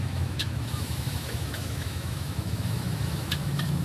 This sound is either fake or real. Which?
fake